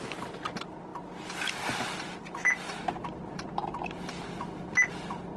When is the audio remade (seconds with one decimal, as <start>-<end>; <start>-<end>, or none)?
none

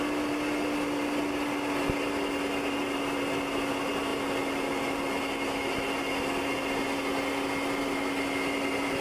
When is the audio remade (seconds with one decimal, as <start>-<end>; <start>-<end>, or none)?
none

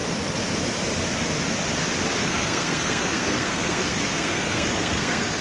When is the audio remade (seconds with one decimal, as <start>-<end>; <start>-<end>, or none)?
2.2-5.4

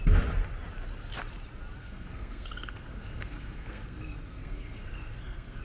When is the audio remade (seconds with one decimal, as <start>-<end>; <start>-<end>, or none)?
1.8-5.6

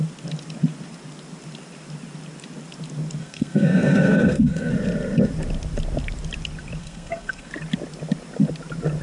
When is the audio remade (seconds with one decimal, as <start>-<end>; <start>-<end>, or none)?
3.2-4.7; 6.8-7.5